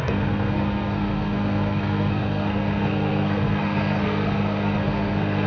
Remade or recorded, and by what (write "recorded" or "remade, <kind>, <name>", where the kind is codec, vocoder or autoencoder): remade, codec, SNAC